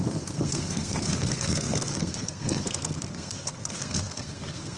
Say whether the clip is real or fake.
fake